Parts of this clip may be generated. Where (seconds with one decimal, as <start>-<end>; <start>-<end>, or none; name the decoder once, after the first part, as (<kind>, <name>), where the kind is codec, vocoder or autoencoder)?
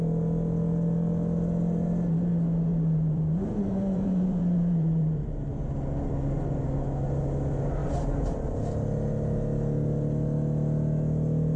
2.7-5.6 (vocoder, BigVGAN v2); 7.8-8.6